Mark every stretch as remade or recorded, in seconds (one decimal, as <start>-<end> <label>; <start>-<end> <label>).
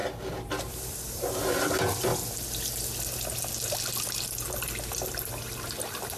0.0-1.3 remade; 1.3-6.2 recorded